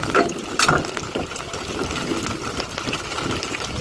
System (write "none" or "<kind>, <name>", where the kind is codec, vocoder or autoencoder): none